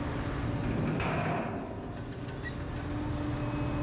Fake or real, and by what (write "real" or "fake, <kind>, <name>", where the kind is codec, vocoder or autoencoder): real